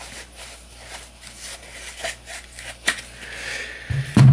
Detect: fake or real real